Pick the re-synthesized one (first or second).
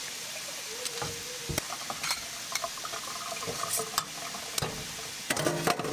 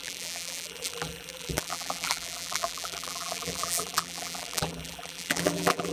second